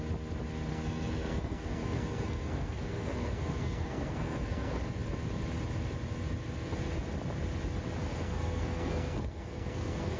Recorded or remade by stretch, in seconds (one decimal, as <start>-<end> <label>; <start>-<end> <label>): 0.0-0.7 recorded; 0.7-4.8 remade; 4.8-8.0 recorded; 8.0-10.2 remade